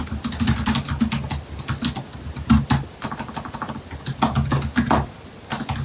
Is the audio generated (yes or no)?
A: no